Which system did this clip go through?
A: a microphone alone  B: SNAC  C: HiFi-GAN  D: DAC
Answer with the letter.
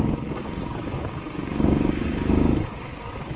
D